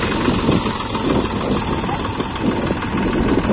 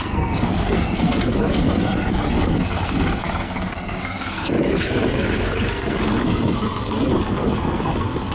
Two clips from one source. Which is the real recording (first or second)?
first